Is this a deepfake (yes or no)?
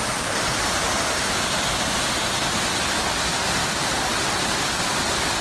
no